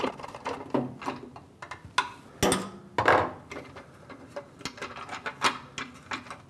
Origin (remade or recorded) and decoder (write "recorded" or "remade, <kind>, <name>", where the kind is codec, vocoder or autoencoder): recorded